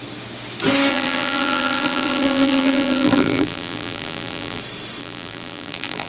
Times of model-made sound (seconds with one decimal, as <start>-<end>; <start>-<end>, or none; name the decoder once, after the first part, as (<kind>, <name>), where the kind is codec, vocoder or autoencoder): 0.9-4.6 (vocoder, BigVGAN v2); 5.0-6.1